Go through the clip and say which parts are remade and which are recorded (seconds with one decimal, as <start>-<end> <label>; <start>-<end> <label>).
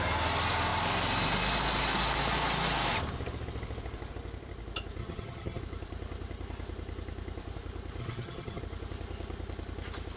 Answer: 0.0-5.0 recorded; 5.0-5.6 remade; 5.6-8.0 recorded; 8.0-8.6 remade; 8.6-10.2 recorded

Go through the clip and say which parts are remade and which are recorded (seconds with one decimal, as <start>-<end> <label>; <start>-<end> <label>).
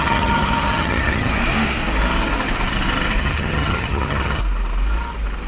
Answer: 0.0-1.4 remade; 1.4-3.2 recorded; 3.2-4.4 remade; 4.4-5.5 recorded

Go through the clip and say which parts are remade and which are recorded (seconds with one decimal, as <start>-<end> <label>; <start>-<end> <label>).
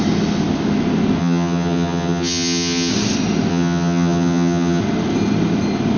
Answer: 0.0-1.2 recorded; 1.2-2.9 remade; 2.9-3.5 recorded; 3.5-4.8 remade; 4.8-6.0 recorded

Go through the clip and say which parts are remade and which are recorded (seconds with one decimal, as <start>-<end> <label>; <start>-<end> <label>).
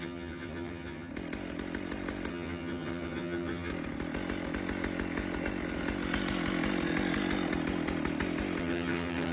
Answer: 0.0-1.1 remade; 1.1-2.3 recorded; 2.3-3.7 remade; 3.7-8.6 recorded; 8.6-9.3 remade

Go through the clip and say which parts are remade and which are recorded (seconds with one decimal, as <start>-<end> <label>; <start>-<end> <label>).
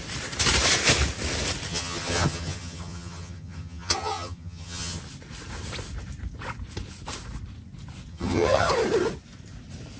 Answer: 0.0-1.7 recorded; 1.7-5.0 remade; 5.0-8.1 recorded; 8.1-8.7 remade; 8.7-10.0 recorded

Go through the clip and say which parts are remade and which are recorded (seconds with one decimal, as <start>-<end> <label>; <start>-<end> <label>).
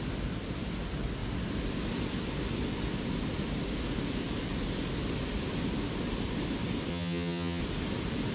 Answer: 0.0-6.9 recorded; 6.9-7.6 remade; 7.6-8.3 recorded